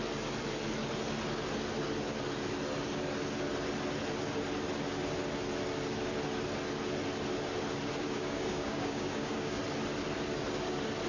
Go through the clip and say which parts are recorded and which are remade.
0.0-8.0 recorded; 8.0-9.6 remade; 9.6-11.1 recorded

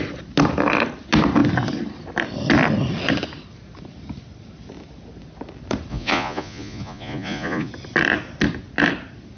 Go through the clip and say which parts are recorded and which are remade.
0.0-5.9 recorded; 5.9-7.7 remade; 7.7-9.4 recorded

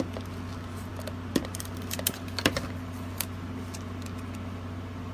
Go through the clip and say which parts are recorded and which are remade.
0.0-5.1 recorded

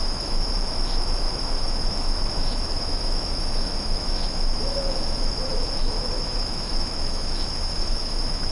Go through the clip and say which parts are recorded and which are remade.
0.0-8.5 remade